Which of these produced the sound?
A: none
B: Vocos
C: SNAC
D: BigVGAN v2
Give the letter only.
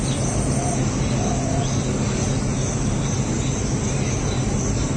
A